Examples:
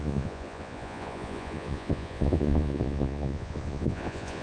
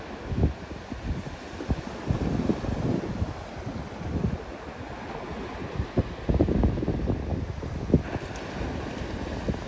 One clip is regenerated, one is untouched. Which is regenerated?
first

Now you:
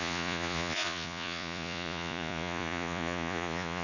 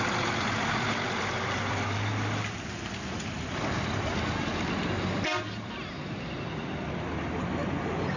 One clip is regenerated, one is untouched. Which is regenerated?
first